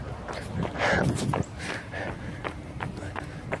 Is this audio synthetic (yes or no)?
no